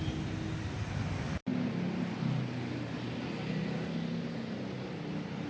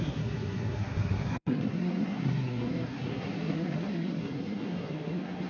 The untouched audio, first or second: first